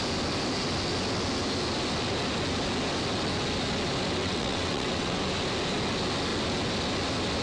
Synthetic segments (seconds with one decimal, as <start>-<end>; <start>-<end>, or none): 4.2-5.2